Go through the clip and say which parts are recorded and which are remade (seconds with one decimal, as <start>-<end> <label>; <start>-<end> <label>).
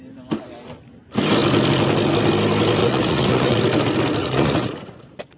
0.0-2.8 recorded; 2.8-3.6 remade; 3.6-4.2 recorded; 4.2-5.4 remade